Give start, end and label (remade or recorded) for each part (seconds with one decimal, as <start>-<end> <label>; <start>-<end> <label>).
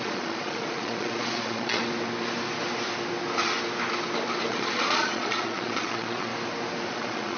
0.0-1.8 remade; 1.8-4.5 recorded; 4.5-6.3 remade; 6.3-6.9 recorded; 6.9-7.4 remade